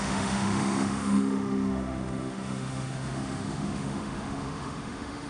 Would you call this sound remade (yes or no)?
yes